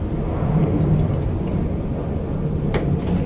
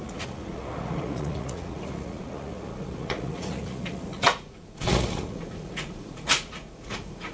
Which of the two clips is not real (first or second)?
second